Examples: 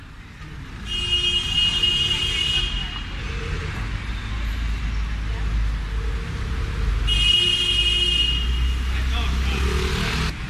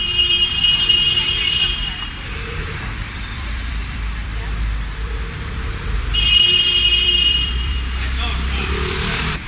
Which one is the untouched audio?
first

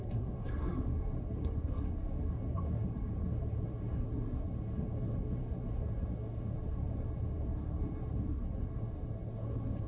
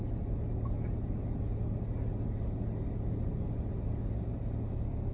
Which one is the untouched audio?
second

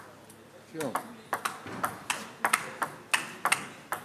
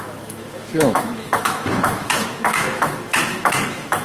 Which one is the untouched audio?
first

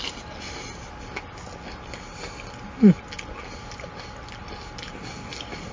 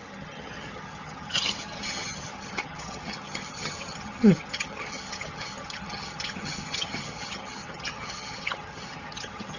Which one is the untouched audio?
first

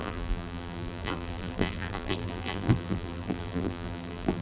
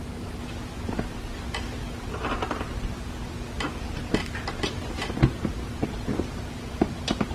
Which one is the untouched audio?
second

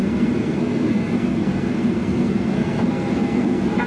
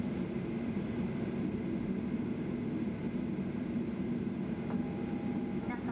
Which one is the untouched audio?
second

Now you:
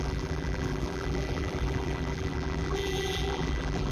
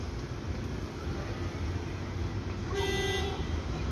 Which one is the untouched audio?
second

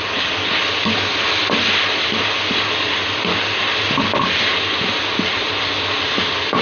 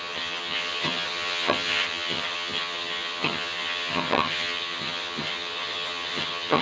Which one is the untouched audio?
first